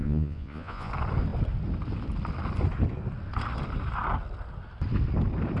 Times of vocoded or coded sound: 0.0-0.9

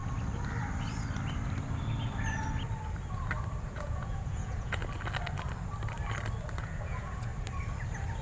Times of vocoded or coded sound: 3.6-4.8; 6.6-7.3